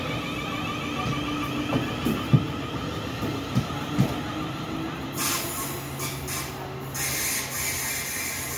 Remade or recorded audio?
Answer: recorded